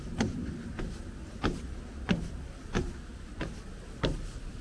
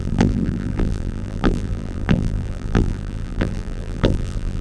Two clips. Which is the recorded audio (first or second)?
first